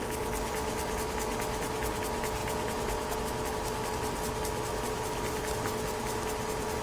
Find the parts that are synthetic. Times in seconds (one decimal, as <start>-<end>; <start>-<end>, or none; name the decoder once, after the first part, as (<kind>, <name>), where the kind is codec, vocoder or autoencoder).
2.4-3.2 (vocoder, Vocos)